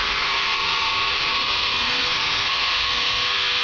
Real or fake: fake